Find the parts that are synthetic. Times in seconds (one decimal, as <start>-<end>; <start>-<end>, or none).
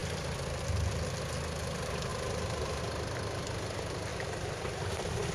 0.0-0.6; 2.1-2.8; 4.1-5.3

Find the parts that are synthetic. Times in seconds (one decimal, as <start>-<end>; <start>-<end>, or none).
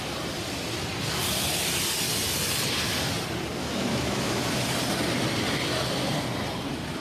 3.6-4.4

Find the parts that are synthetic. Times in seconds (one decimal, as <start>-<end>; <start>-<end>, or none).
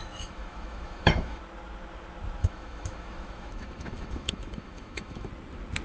0.0-1.4; 2.4-5.3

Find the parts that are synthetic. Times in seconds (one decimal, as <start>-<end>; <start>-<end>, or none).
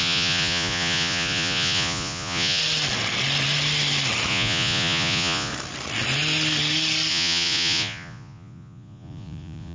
0.0-2.6; 4.3-5.5; 7.1-9.7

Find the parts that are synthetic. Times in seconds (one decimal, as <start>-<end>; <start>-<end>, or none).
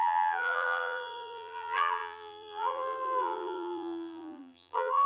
0.0-5.1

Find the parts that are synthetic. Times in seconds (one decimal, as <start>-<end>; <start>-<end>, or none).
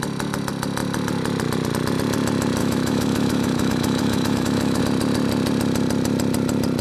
2.6-4.8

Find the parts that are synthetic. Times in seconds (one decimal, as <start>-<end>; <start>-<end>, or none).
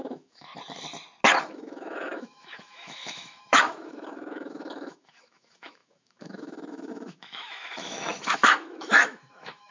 0.0-0.5; 1.5-9.7